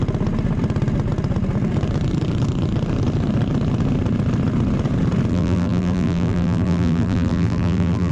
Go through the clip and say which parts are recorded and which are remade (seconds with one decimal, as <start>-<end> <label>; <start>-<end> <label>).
0.0-5.3 recorded; 5.3-8.1 remade